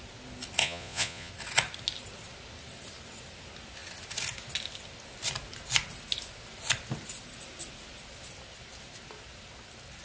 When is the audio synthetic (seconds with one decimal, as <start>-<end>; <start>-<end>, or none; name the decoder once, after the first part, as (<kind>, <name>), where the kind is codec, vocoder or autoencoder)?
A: 0.6-1.3 (vocoder, Vocos)